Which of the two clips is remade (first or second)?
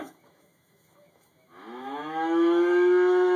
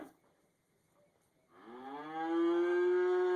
first